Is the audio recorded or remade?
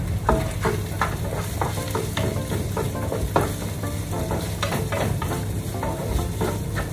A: recorded